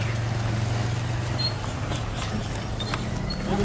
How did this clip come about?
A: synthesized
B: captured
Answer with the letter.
B